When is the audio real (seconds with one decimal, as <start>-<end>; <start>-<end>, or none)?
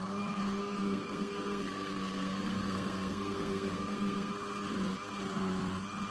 0.0-0.6; 4.3-6.1